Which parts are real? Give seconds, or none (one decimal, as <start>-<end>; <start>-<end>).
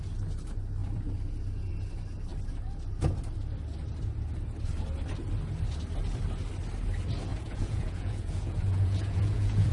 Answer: 0.0-7.3